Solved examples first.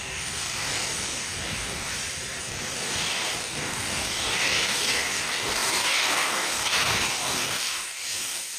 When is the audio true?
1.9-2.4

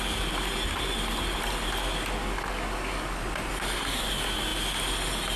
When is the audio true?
0.0-2.2; 3.2-5.4

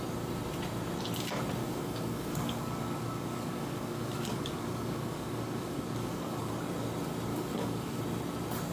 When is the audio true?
0.0-1.6; 6.5-7.3; 8.0-8.7